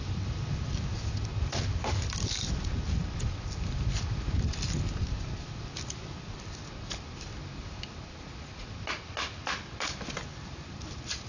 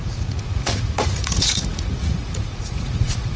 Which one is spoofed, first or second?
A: second